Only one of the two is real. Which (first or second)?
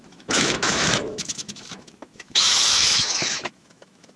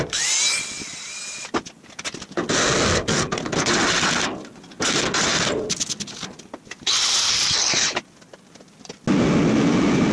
second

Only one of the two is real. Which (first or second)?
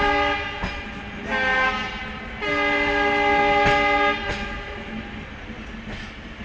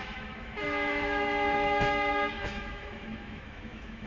first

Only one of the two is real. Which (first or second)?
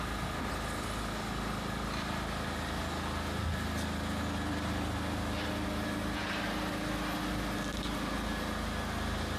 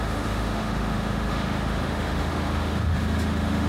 first